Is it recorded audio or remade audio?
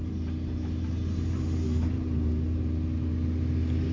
recorded